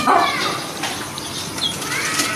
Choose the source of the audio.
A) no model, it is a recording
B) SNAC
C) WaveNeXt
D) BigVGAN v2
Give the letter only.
A